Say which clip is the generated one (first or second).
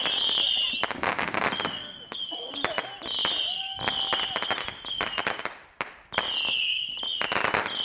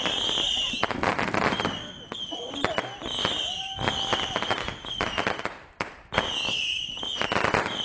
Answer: second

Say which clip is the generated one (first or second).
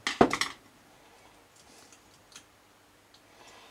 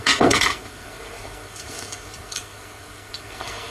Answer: second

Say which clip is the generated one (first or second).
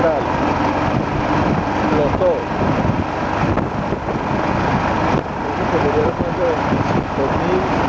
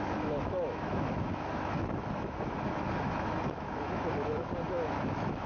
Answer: second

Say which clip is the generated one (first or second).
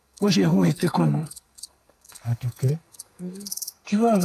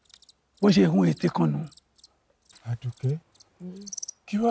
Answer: first